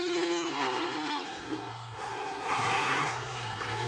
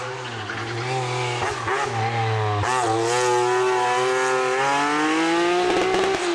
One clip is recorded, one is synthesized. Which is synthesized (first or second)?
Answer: first